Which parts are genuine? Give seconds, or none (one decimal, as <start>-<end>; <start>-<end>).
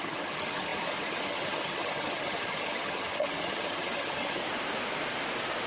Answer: 4.4-5.7